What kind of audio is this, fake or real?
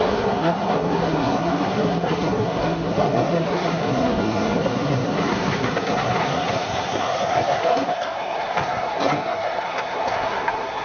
fake